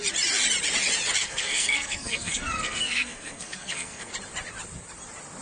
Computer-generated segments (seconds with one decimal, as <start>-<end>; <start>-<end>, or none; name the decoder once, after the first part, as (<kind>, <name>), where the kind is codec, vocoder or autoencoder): 1.2-4.1 (codec, SNAC)